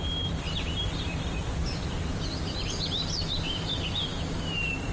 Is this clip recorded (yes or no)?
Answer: no